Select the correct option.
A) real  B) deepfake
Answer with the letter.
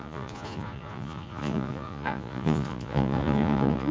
B